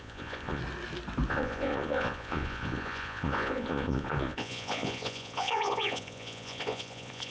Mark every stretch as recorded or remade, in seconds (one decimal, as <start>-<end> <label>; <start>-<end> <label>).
0.0-0.6 remade; 0.6-1.3 recorded; 1.3-7.3 remade